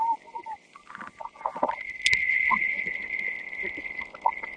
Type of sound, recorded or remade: recorded